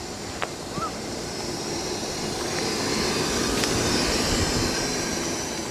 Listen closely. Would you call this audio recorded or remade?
recorded